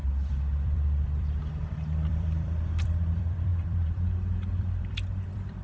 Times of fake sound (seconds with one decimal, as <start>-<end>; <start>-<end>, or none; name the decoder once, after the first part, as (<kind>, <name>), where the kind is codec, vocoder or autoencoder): 0.0-5.6 (vocoder, BigVGAN v2)